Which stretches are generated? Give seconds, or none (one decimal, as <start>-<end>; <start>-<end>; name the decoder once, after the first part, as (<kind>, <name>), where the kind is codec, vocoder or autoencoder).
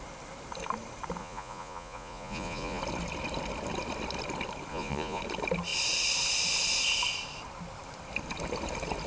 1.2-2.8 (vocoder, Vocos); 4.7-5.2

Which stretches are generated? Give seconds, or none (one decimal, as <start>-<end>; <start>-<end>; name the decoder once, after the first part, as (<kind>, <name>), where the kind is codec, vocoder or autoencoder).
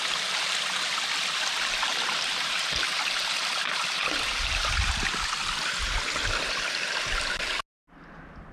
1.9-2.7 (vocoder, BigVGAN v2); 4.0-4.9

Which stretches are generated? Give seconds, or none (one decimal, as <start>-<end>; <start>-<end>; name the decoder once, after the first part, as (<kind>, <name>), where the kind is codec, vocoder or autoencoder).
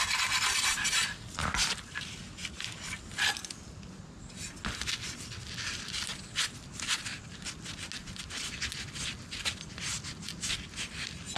0.7-2.0 (vocoder, BigVGAN v2); 2.4-3.3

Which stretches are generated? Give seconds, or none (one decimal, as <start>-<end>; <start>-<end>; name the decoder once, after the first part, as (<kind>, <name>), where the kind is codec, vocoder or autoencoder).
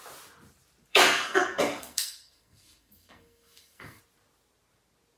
0.9-4.0 (codec, SNAC)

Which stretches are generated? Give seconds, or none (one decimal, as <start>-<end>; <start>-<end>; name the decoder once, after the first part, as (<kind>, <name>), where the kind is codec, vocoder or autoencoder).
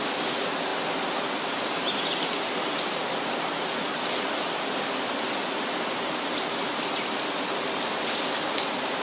none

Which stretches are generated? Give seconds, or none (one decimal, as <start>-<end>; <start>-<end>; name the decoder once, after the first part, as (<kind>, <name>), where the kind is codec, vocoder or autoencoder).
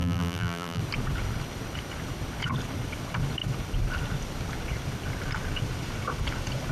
0.0-0.8 (vocoder, BigVGAN v2)